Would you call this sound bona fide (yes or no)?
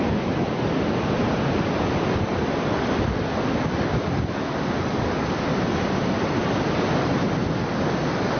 yes